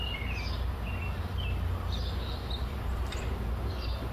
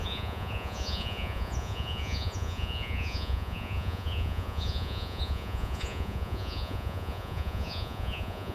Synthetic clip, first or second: second